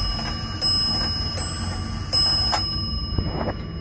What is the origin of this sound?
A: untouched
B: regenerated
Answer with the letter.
A